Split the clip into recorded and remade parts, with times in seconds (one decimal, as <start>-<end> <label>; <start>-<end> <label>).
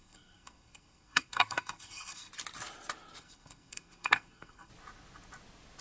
0.0-2.3 remade; 2.3-3.2 recorded; 3.2-4.7 remade; 4.7-5.8 recorded